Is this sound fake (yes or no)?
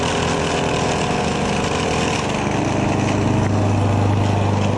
no